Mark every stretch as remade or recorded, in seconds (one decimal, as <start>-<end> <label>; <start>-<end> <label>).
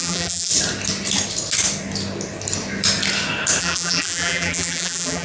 0.0-0.5 remade; 0.5-3.6 recorded; 3.6-5.2 remade